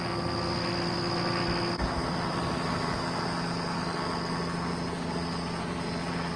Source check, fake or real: real